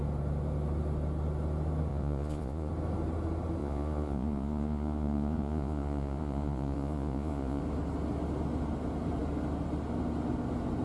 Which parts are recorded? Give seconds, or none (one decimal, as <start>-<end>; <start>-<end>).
0.0-1.9; 2.7-3.6; 7.6-10.8